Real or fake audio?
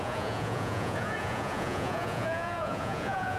fake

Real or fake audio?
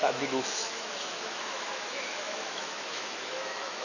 fake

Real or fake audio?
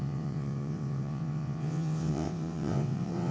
fake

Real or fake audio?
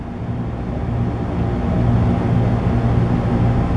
real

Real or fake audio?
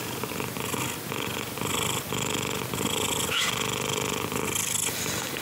real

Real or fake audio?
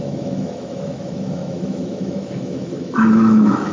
fake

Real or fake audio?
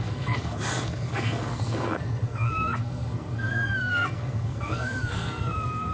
fake